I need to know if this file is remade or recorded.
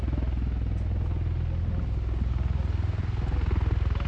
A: recorded